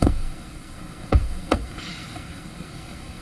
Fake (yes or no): yes